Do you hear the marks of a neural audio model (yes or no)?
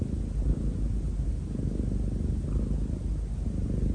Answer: no